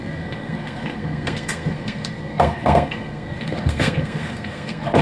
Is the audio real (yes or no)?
no